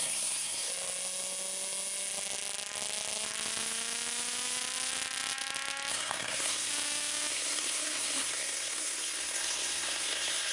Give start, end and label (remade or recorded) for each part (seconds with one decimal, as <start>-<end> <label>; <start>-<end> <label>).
0.0-0.7 remade; 0.7-5.9 recorded; 5.9-6.7 remade; 6.7-7.3 recorded; 7.3-10.5 remade

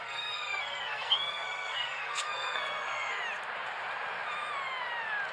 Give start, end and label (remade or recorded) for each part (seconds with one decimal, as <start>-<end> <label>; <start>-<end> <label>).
0.0-3.2 remade; 3.2-5.3 recorded

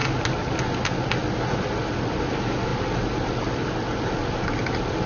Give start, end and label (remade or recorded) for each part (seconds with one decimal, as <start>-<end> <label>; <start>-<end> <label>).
0.0-5.1 recorded

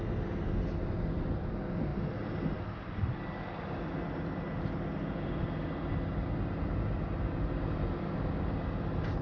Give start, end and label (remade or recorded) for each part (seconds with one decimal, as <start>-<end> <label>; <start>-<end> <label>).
0.0-9.2 recorded

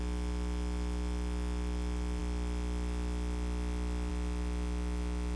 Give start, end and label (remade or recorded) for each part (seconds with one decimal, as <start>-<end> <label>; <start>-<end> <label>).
0.0-5.4 recorded